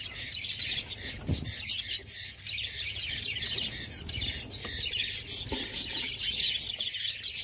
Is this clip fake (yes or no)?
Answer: no